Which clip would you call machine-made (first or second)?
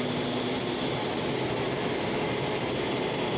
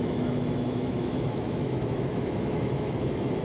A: second